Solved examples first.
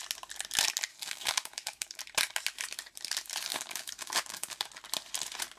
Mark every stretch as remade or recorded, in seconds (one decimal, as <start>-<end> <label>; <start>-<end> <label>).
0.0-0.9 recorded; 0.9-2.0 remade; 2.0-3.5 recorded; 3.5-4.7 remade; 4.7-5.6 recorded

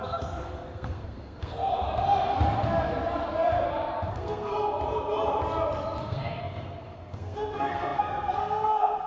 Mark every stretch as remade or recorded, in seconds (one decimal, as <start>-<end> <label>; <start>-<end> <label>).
0.0-1.7 remade; 1.7-4.1 recorded; 4.1-4.5 remade; 4.5-6.0 recorded; 6.0-9.1 remade

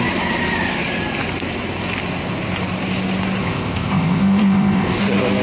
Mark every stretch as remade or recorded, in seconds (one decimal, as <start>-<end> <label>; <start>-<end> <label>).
0.0-3.4 recorded; 3.4-5.0 remade; 5.0-5.4 recorded

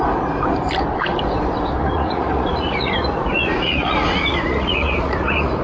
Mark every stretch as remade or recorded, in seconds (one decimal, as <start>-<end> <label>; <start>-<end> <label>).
0.0-1.8 recorded; 1.8-5.6 remade

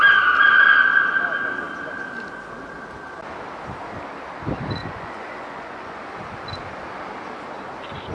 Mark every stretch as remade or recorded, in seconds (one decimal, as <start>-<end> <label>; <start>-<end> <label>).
0.0-4.8 recorded; 4.8-6.0 remade; 6.0-8.1 recorded

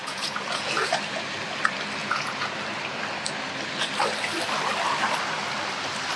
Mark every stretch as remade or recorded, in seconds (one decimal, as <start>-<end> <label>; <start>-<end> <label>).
0.0-0.9 remade; 0.9-2.0 recorded; 2.0-2.5 remade; 2.5-6.2 recorded

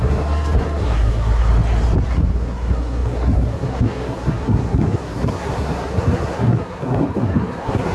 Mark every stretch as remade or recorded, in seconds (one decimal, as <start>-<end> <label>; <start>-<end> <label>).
0.0-1.5 remade; 1.5-2.1 recorded; 2.1-7.9 remade

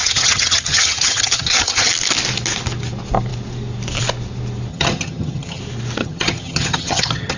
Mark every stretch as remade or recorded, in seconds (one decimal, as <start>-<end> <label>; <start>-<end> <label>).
0.0-1.9 remade; 1.9-4.7 recorded; 4.7-5.6 remade; 5.6-6.0 recorded; 6.0-7.4 remade